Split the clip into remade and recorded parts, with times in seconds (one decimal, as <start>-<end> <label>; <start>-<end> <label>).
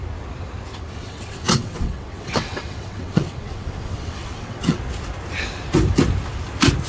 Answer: 0.0-0.7 recorded; 0.7-4.8 remade; 4.8-6.9 recorded